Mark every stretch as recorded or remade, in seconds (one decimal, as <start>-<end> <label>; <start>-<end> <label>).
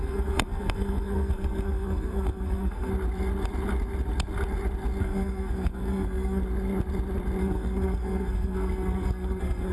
0.0-2.9 remade; 2.9-5.0 recorded; 5.0-6.4 remade; 6.4-7.4 recorded; 7.4-9.7 remade